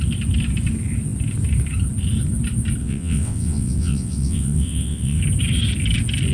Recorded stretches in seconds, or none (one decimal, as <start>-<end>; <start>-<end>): 0.0-2.8; 5.2-6.3